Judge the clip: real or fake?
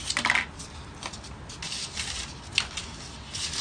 real